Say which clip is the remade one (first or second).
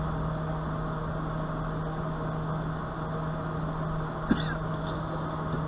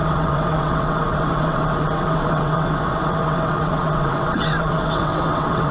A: second